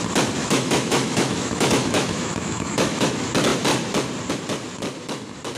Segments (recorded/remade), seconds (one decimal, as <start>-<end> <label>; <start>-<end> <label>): 0.0-0.4 recorded; 0.4-3.1 remade; 3.1-5.6 recorded